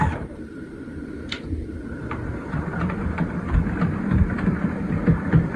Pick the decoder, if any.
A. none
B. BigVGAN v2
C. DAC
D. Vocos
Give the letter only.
B